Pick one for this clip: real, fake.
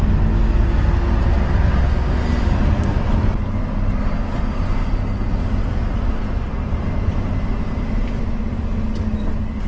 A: real